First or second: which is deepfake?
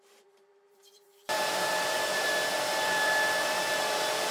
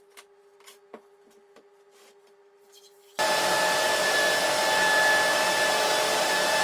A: first